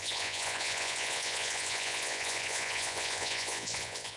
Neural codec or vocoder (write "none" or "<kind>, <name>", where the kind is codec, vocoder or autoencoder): vocoder, Vocos